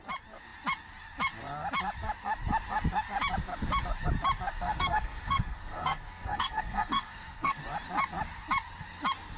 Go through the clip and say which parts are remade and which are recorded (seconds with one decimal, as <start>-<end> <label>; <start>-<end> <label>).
0.0-4.5 recorded; 4.5-7.6 remade; 7.6-9.4 recorded